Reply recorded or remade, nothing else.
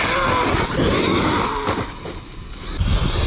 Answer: recorded